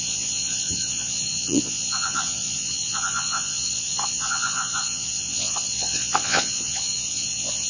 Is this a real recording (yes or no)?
no